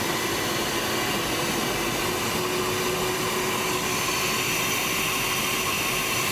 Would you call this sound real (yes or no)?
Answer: yes